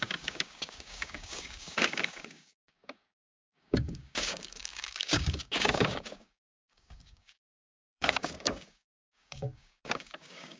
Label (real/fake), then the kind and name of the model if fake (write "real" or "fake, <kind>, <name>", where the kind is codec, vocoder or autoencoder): fake, codec, DAC